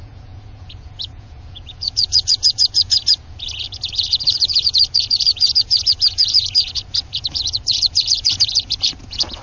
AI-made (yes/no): yes